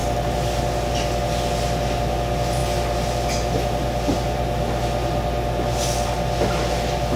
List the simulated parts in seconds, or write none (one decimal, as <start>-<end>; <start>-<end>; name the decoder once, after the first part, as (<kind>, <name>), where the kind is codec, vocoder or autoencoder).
none